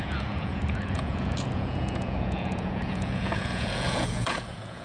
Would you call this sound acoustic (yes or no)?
no